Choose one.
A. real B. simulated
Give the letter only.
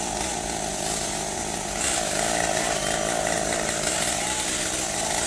A